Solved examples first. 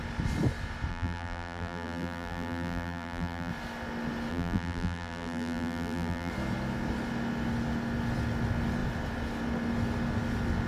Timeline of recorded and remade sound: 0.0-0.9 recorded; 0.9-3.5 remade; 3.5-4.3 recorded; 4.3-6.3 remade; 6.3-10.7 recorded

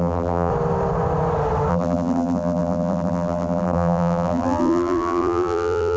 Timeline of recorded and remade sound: 0.0-0.5 remade; 0.5-1.7 recorded; 1.7-6.0 remade

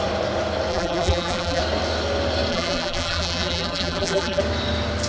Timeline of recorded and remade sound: 0.0-0.7 recorded; 0.7-1.6 remade; 1.6-2.5 recorded; 2.5-4.4 remade; 4.4-5.1 recorded

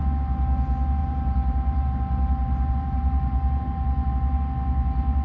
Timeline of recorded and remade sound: 0.0-1.0 recorded; 1.0-4.1 remade; 4.1-5.2 recorded